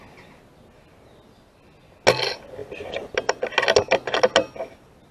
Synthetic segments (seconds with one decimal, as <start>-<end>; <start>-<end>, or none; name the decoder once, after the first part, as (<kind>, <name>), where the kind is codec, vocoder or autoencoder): 2.6-3.4 (vocoder, BigVGAN v2)